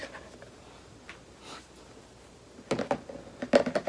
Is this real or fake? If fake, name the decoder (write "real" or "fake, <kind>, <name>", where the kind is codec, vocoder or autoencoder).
real